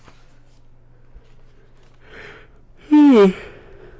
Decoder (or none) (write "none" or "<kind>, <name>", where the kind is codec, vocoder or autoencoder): none